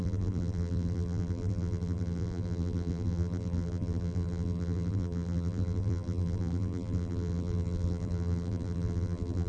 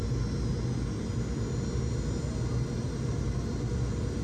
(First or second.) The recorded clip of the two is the second